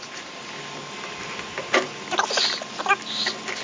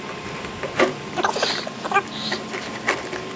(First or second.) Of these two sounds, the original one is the first